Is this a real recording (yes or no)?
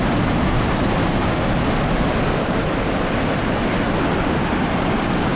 yes